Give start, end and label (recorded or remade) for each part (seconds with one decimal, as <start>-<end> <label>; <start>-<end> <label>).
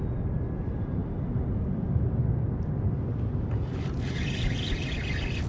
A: 0.0-5.5 recorded